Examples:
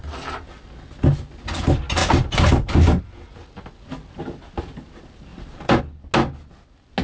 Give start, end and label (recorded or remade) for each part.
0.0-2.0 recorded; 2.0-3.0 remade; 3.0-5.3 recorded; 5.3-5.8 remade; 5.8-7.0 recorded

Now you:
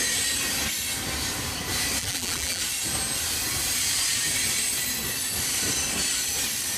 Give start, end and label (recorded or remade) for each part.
0.0-2.0 recorded; 2.0-2.6 remade; 2.6-6.8 recorded

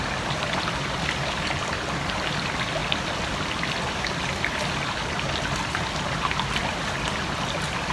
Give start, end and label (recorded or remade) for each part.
0.0-7.9 recorded

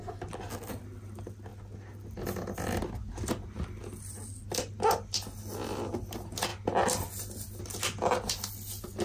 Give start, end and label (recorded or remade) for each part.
0.0-9.0 recorded

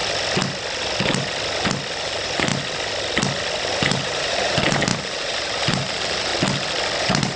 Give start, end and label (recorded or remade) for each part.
0.0-1.9 recorded; 1.9-2.5 remade; 2.5-3.7 recorded; 3.7-6.3 remade; 6.3-7.0 recorded; 7.0-7.4 remade

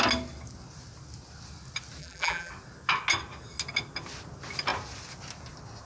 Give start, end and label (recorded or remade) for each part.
0.0-2.0 recorded; 2.0-2.5 remade; 2.5-5.9 recorded

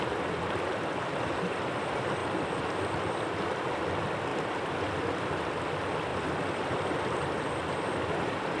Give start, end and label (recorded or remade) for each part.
0.0-2.2 remade; 2.2-3.1 recorded; 3.1-8.6 remade